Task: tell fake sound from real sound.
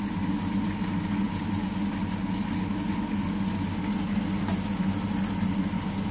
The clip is real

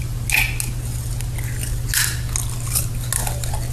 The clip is real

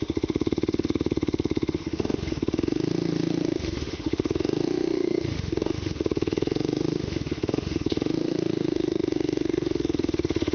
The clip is fake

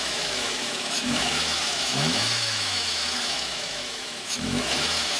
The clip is fake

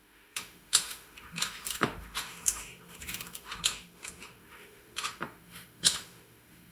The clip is fake